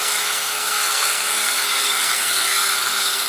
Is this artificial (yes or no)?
yes